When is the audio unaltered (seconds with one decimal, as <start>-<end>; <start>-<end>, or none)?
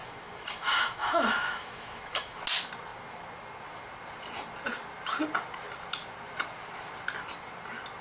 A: 2.4-8.0